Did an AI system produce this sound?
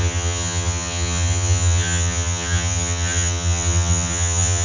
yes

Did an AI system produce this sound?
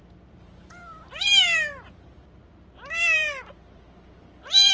yes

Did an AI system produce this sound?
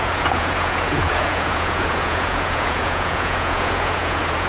yes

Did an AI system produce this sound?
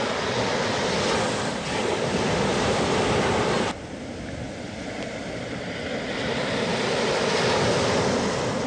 no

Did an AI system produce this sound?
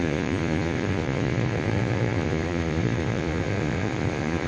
yes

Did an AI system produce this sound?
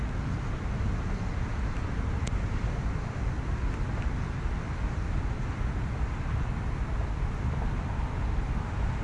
no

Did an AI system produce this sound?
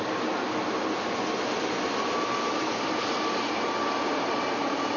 no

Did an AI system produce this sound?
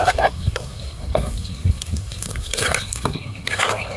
yes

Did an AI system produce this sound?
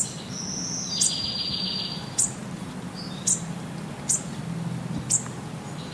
no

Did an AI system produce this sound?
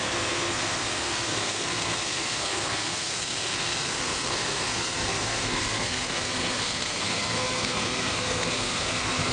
yes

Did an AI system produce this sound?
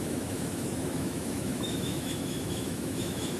yes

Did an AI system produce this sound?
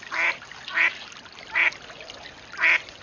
no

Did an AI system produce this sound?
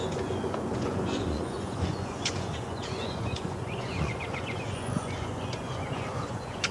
yes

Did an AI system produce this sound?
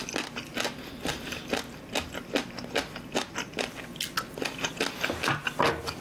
no